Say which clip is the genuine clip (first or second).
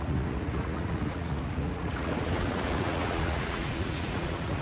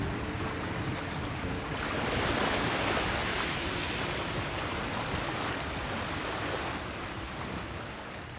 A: second